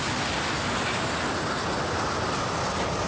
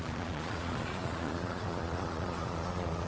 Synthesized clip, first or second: second